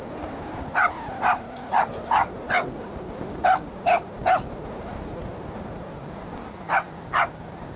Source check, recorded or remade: recorded